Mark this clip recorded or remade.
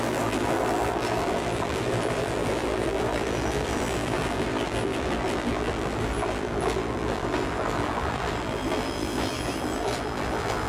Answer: remade